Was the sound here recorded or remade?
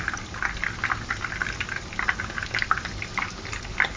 recorded